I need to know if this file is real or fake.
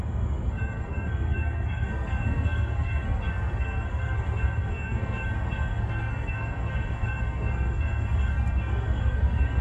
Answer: fake